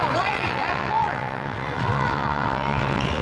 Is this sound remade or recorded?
remade